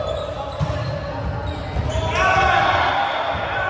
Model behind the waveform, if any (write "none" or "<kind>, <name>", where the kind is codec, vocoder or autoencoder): none